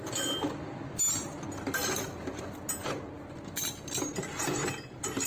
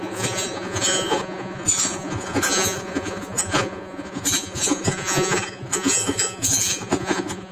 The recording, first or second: first